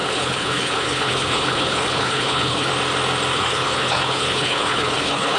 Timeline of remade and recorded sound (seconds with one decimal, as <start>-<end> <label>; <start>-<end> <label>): 0.0-2.7 remade; 2.7-3.3 recorded; 3.3-5.4 remade